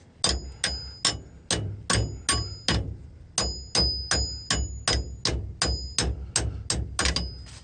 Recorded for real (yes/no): yes